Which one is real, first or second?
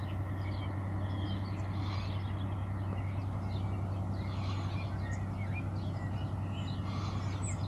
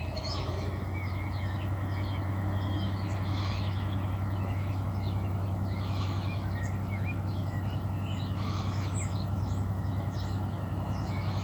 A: first